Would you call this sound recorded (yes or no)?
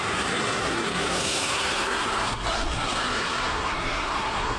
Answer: no